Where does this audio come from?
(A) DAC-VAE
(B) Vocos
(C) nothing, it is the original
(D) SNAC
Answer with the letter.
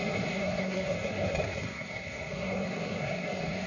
D